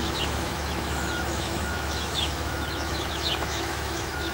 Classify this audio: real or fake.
fake